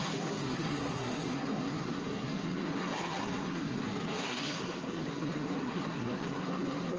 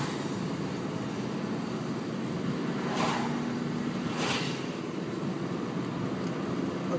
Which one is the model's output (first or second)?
first